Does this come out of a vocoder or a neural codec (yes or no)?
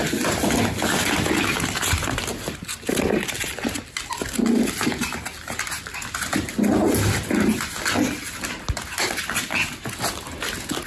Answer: no